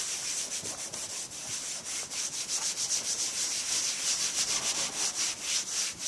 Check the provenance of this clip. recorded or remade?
recorded